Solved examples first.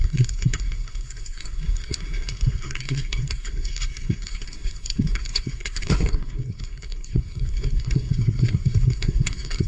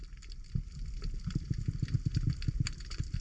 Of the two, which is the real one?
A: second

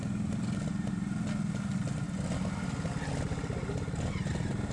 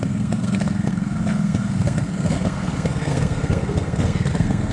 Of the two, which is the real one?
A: first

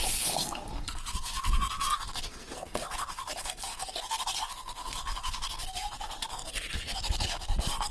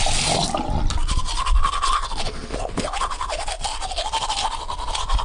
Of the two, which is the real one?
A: second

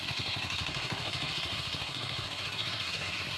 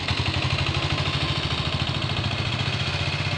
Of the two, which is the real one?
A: second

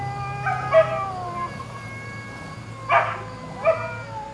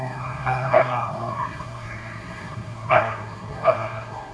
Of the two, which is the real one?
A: first